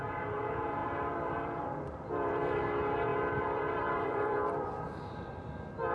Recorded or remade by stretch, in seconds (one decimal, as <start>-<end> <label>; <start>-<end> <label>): 0.0-0.8 recorded; 0.8-2.6 remade; 2.6-3.1 recorded; 3.1-5.4 remade; 5.4-5.9 recorded